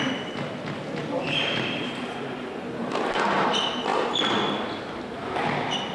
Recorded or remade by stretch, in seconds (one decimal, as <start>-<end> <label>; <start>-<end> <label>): 0.0-5.9 recorded